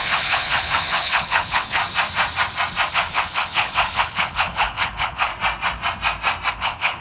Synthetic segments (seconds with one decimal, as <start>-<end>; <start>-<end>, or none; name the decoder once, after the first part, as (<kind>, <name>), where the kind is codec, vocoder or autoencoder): 0.0-1.8 (codec, HILCodec); 2.9-5.3; 6.5-7.0